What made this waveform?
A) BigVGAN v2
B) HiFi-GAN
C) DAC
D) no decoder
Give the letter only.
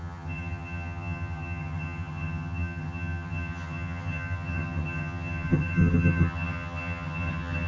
B